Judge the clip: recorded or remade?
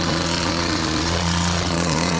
remade